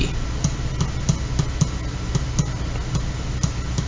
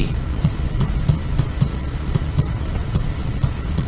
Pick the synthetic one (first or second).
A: second